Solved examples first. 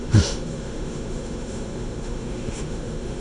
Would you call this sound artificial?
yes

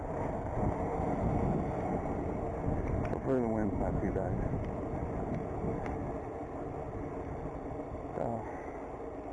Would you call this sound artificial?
no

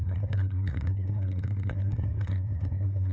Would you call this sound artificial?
yes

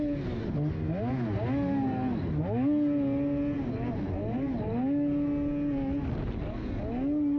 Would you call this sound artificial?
no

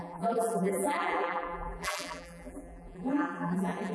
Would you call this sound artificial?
yes